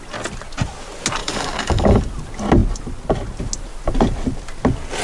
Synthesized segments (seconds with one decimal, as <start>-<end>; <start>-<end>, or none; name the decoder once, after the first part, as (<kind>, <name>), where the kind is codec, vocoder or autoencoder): 1.2-2.0 (codec, DAC)